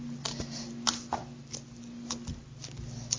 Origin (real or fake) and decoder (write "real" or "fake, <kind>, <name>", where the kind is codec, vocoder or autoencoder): real